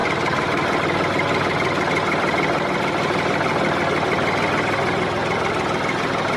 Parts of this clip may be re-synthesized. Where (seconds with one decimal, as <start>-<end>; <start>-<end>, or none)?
none